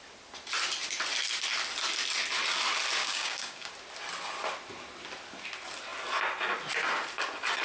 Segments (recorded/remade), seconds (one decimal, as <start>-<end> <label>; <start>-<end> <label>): 0.0-3.0 recorded; 3.0-3.7 remade; 3.7-7.6 recorded